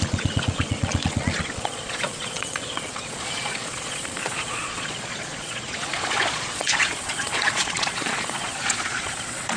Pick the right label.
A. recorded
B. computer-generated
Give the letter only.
B